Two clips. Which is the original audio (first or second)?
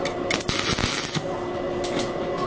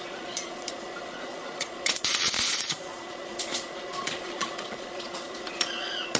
first